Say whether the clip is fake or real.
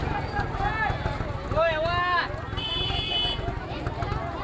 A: real